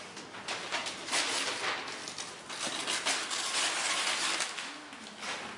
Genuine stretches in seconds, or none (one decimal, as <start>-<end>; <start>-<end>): 0.0-5.6